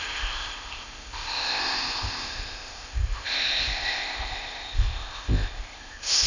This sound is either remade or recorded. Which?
remade